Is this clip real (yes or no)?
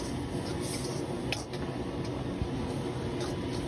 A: yes